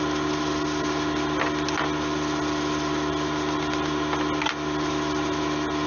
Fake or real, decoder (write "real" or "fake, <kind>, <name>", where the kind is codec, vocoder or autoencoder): real